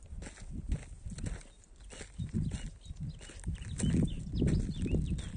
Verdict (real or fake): real